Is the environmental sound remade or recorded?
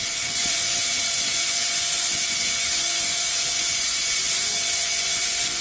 remade